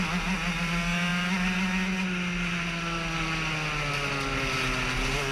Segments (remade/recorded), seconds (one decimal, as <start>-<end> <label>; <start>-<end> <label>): 0.0-5.3 recorded